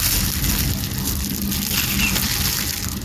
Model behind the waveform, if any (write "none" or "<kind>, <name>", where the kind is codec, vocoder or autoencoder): none